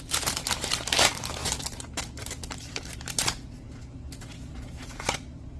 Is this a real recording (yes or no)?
no